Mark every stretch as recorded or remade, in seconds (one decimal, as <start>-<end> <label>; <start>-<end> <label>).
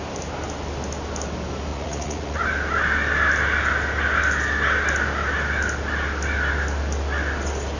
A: 0.0-1.7 recorded; 1.7-2.4 remade; 2.4-7.8 recorded